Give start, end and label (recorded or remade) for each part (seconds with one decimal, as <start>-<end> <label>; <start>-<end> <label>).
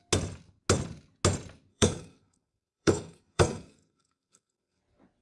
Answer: 0.0-1.7 recorded; 1.7-4.8 remade; 4.8-5.2 recorded